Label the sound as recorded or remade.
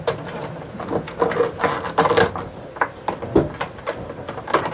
recorded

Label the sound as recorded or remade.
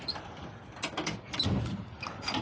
recorded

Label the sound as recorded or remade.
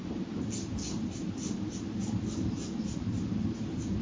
recorded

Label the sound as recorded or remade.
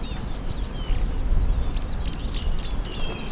recorded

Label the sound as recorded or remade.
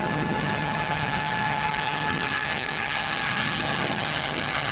remade